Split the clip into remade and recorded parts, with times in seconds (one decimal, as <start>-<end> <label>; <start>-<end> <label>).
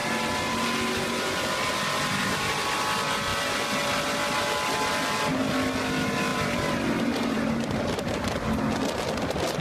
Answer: 0.0-6.3 recorded; 6.3-8.3 remade; 8.3-9.6 recorded